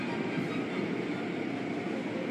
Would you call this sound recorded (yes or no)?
no